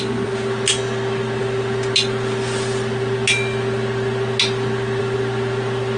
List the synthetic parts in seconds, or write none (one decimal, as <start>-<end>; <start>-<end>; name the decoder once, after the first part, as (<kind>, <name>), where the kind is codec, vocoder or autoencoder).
none